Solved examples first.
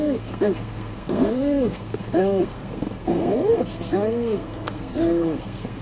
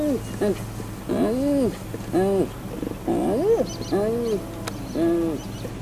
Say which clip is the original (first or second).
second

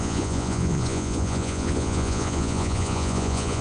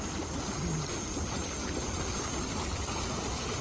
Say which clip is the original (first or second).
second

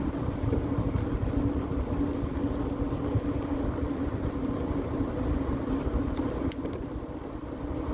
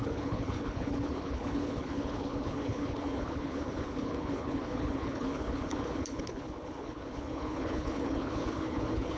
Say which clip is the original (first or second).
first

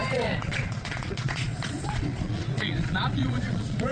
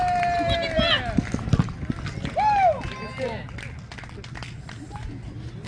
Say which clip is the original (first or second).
second